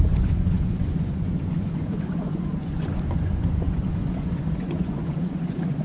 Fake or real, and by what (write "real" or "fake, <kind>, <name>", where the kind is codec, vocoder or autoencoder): fake, vocoder, Vocos